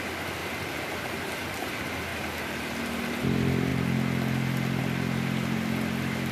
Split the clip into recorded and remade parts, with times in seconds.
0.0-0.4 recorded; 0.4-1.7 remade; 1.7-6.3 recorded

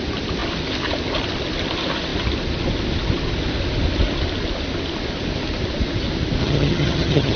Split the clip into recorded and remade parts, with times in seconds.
0.0-6.4 recorded; 6.4-7.4 remade

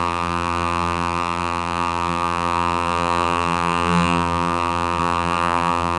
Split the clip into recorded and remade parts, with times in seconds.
0.0-6.0 remade

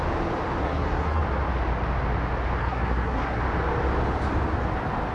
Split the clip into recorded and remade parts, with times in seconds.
0.0-0.6 recorded; 0.6-1.2 remade; 1.2-2.6 recorded; 2.6-3.4 remade; 3.4-5.1 recorded

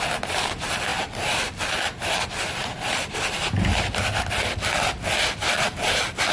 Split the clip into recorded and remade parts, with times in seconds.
0.0-6.3 remade

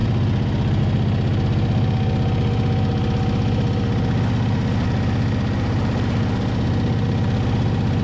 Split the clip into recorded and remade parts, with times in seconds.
0.0-8.0 recorded